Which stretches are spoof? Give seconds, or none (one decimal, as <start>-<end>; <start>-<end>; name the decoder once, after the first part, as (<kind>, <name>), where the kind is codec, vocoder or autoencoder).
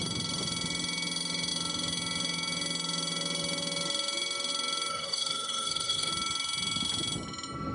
4.9-6.1 (codec, SNAC)